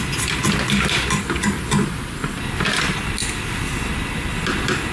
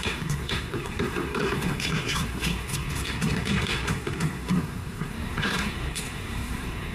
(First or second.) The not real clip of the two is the second